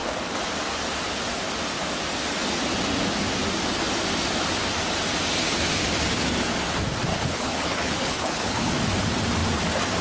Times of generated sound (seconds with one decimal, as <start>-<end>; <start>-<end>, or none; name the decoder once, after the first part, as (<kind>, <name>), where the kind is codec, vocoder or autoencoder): 7.1-8.7 (codec, HILCodec)